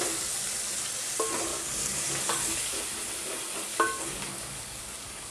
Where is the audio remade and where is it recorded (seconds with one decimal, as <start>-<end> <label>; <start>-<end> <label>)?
0.0-1.5 recorded; 1.5-2.8 remade; 2.8-3.7 recorded; 3.7-5.3 remade